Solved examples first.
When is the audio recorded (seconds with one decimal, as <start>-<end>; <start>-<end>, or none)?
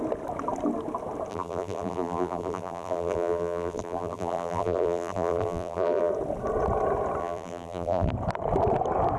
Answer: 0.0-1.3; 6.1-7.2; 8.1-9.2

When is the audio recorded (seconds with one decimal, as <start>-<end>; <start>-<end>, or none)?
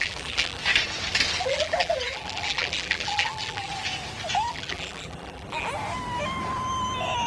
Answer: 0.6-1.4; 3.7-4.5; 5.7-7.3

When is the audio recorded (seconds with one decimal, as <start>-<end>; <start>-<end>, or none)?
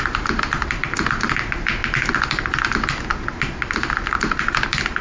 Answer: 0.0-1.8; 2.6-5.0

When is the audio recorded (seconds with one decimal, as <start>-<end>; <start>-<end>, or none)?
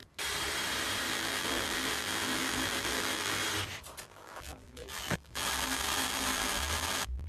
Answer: 0.0-1.1; 3.4-4.0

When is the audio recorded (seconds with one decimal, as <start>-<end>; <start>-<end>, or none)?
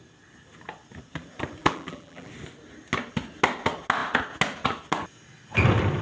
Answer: 0.0-1.6; 2.3-6.0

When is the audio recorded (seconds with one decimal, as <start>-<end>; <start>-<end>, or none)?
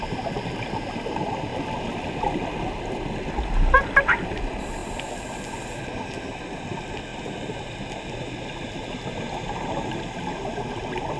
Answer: 0.0-1.5; 2.1-7.1; 7.8-11.2